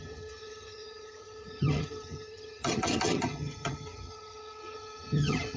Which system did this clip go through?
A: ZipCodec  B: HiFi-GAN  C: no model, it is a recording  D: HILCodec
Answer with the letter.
B